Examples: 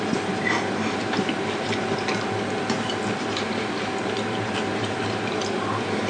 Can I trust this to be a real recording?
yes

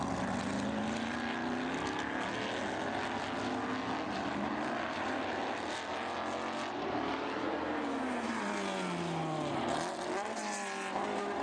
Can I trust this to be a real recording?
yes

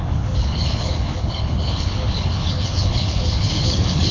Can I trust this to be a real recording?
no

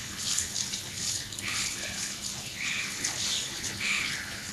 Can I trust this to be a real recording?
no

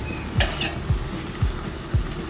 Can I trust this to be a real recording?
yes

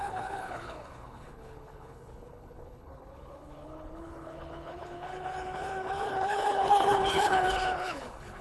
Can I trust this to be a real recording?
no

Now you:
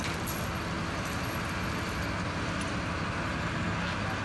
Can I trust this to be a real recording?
yes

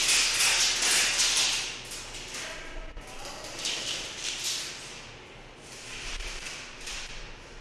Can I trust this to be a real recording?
yes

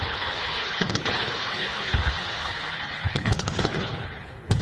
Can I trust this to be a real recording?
no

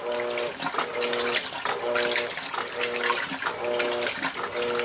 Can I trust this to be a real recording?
yes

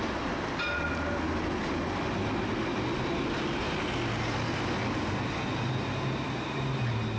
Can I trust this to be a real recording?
yes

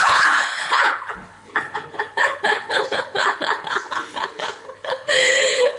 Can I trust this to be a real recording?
no